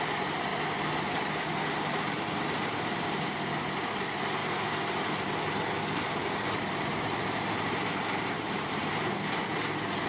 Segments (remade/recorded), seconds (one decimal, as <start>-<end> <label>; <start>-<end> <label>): 0.0-0.5 remade; 0.5-1.2 recorded; 1.2-4.4 remade; 4.4-6.2 recorded; 6.2-8.8 remade; 8.8-9.4 recorded; 9.4-10.1 remade